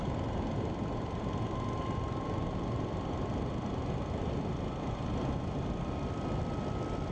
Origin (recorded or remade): recorded